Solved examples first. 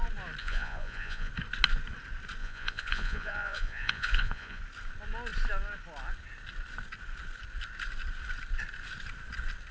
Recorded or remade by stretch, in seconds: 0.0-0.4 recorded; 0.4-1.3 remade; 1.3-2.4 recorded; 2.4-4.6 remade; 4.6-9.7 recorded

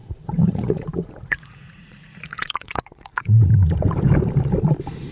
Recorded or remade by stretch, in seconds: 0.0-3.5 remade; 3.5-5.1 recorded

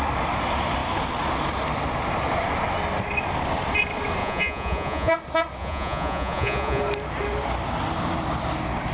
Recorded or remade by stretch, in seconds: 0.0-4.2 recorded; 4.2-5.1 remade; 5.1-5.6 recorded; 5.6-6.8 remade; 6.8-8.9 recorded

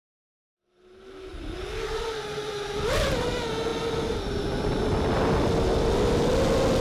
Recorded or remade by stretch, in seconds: 0.0-6.8 recorded